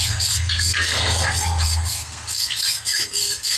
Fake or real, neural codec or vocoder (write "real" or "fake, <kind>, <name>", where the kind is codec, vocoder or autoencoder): fake, codec, SNAC